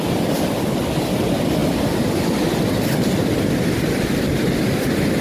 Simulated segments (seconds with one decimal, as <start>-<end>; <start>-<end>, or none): none